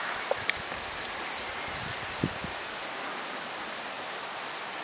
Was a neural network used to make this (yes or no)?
no